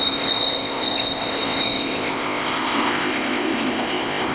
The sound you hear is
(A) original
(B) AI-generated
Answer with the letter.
B